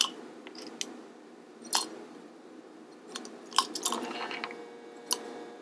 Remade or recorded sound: recorded